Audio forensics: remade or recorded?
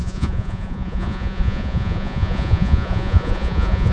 remade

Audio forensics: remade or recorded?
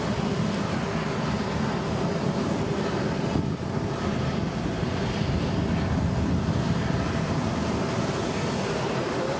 recorded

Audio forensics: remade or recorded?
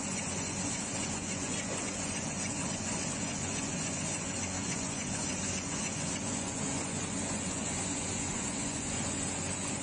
remade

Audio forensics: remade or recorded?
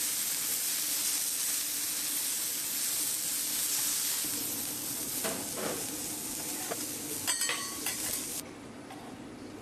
recorded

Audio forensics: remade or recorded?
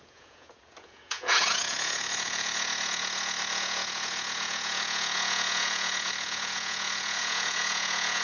remade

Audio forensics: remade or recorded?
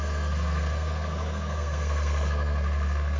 remade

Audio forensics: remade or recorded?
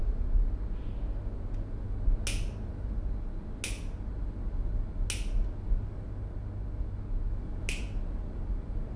recorded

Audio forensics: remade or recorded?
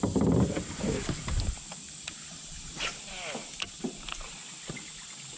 recorded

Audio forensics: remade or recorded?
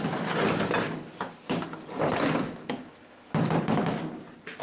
recorded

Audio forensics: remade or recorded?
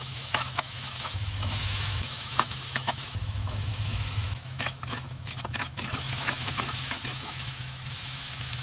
remade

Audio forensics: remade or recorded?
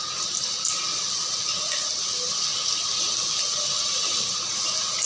recorded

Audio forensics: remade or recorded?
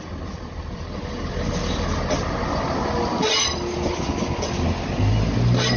recorded